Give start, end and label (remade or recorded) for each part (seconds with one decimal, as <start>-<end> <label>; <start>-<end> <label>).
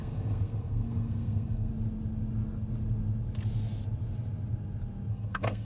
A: 0.0-1.7 remade; 1.7-5.1 recorded; 5.1-5.6 remade